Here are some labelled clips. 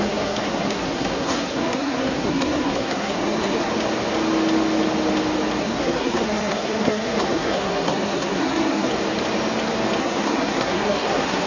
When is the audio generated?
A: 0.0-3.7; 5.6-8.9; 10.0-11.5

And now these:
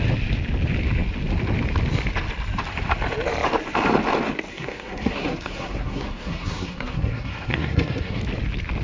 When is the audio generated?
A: 4.5-8.2

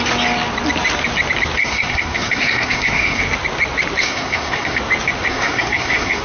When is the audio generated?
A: 1.6-3.2; 4.0-4.8; 5.3-6.2

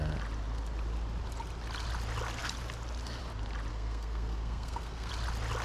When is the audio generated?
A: 3.7-5.1